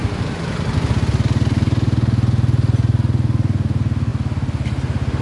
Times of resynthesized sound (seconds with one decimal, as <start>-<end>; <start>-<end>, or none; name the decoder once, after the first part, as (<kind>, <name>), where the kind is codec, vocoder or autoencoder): 0.0-0.9 (vocoder, BigVGAN v2)